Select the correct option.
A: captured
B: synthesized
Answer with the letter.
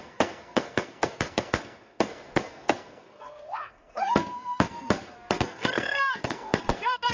B